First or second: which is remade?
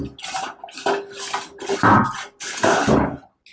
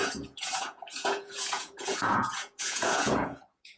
second